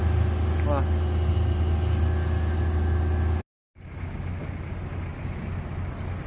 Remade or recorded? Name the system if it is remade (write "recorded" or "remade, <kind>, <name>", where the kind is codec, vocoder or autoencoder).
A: recorded